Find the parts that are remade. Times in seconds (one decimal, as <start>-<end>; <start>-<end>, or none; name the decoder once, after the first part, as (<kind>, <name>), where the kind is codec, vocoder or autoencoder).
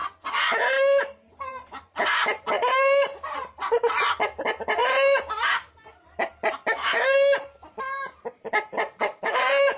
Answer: none